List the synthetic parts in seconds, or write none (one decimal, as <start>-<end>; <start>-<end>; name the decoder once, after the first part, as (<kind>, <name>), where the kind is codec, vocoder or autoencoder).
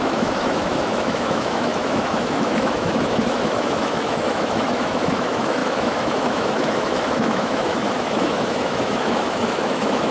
0.0-10.1 (autoencoder, DAC-VAE)